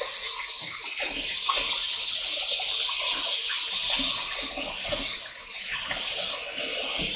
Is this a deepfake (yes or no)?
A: no